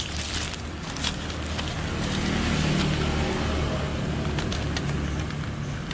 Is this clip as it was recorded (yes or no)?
yes